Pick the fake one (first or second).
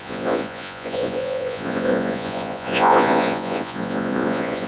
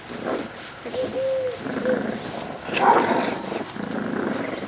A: first